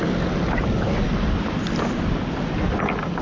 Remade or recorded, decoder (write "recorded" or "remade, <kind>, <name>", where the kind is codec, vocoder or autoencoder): recorded